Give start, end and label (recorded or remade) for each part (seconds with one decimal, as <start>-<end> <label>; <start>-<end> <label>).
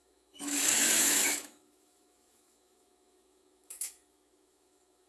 0.0-5.1 remade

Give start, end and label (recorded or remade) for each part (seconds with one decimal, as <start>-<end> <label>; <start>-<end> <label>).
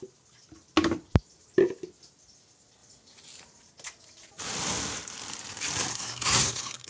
0.0-5.9 recorded; 5.9-6.9 remade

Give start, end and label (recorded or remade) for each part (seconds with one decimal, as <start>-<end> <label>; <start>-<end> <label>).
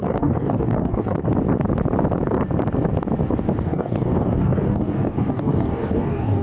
0.0-1.2 remade; 1.2-3.6 recorded; 3.6-6.4 remade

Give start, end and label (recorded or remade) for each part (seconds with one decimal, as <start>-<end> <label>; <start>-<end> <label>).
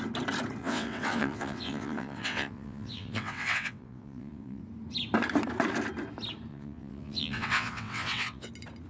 0.0-0.6 recorded; 0.6-4.6 remade; 4.6-6.5 recorded; 6.5-8.5 remade; 8.5-8.9 recorded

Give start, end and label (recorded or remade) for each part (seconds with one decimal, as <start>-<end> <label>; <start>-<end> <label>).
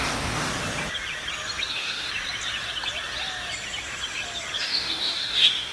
0.0-0.5 remade; 0.5-1.7 recorded; 1.7-2.1 remade; 2.1-4.6 recorded; 4.6-5.7 remade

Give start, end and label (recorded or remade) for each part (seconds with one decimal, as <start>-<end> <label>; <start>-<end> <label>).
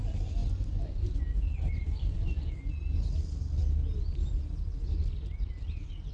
0.0-6.1 recorded